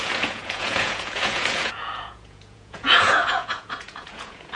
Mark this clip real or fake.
fake